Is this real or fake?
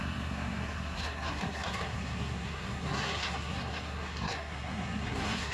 fake